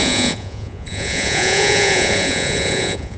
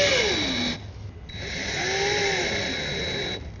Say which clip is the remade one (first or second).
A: first